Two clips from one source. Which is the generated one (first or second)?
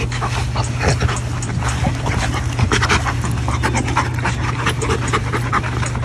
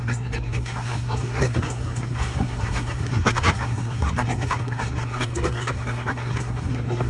second